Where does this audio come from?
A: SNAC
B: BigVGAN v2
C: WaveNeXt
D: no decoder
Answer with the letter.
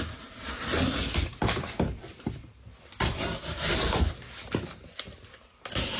D